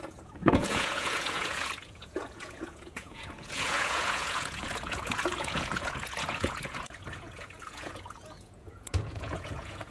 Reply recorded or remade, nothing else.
remade